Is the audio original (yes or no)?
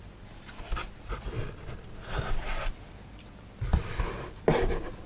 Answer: yes